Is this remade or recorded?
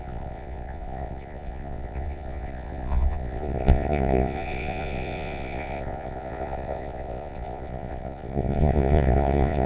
remade